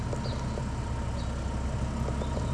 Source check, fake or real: real